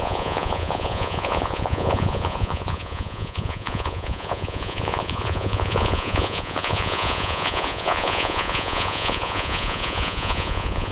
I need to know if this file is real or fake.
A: fake